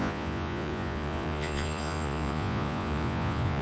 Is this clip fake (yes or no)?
yes